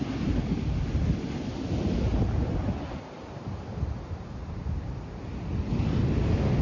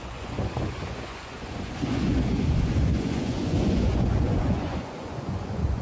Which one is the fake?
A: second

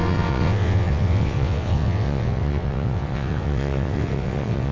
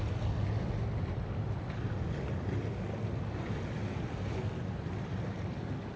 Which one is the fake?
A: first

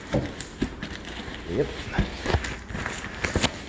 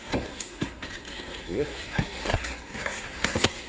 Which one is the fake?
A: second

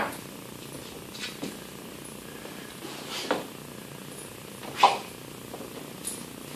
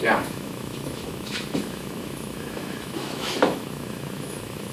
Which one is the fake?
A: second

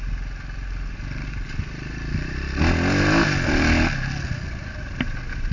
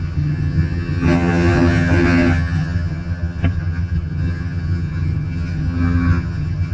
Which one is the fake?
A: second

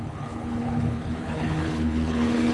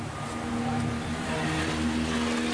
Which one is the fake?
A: first